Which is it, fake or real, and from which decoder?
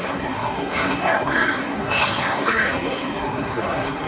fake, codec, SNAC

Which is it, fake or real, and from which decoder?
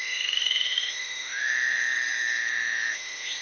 fake, autoencoder, DAC-VAE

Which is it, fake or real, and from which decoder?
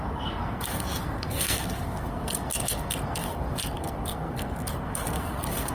fake, codec, SNAC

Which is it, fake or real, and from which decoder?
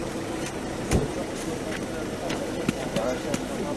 real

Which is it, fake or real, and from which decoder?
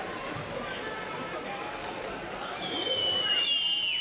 real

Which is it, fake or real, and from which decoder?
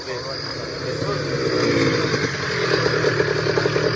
real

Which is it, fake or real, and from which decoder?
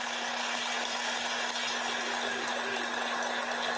real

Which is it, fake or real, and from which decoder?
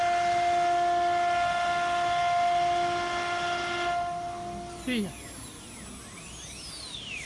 real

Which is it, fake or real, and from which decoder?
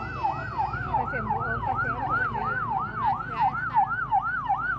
real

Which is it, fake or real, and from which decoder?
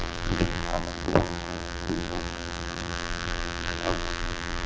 fake, vocoder, BigVGAN v2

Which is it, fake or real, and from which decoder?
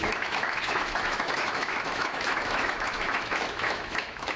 fake, autoencoder, DAC-VAE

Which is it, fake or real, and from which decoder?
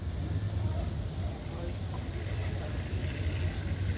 real